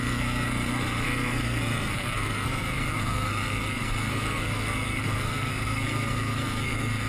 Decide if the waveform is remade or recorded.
remade